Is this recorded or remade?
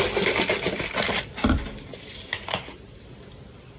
recorded